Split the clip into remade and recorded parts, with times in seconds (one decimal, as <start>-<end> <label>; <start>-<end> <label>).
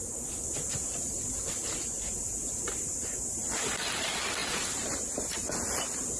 0.0-6.2 recorded